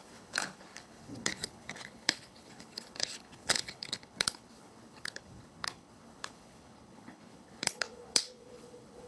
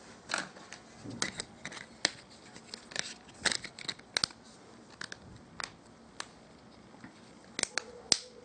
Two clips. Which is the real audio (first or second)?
second